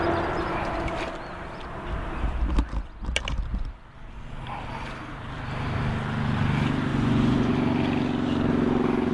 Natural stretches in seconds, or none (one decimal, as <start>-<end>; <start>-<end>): 0.0-6.9; 7.5-9.1